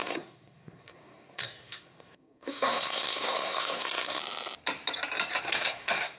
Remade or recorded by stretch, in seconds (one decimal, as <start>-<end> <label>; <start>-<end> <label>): 0.0-4.2 remade; 4.2-5.4 recorded; 5.4-6.2 remade